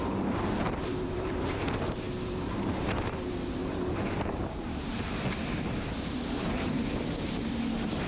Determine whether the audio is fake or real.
fake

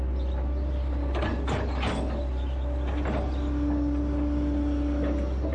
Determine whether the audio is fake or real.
real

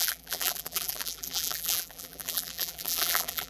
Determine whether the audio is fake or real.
fake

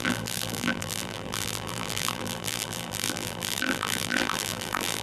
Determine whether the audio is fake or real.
fake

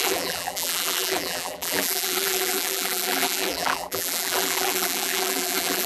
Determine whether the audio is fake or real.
fake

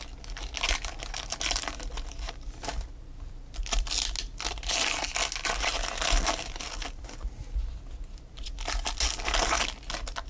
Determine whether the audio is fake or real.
real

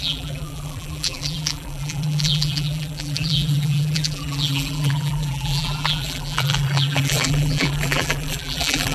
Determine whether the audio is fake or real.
fake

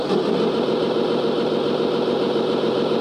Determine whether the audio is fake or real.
fake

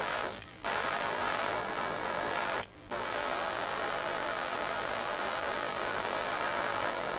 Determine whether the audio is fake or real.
fake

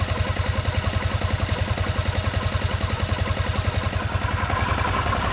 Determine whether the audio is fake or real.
real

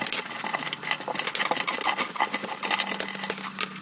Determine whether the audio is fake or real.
real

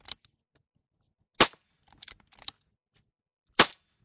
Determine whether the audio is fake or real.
real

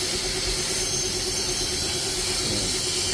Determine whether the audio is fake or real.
fake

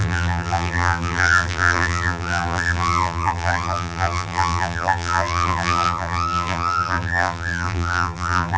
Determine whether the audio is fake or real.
fake